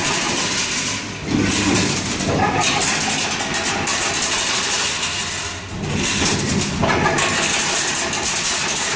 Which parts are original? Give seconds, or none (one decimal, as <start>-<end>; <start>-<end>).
0.0-9.0